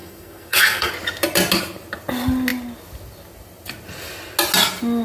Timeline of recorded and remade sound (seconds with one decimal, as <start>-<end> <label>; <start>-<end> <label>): 0.0-0.9 remade; 0.9-5.0 recorded